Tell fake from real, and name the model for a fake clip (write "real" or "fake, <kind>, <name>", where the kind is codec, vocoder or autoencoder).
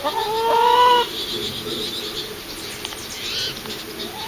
real